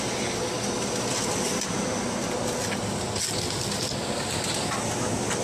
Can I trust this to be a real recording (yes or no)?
yes